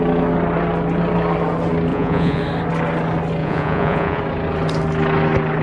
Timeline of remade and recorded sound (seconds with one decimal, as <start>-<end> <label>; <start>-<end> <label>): 0.0-1.9 recorded; 1.9-2.4 remade; 2.4-3.4 recorded; 3.4-4.2 remade; 4.2-5.6 recorded